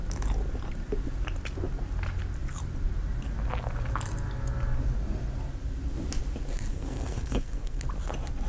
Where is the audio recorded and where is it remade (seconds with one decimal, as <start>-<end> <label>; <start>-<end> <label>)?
0.0-6.7 recorded; 6.7-7.8 remade; 7.8-8.5 recorded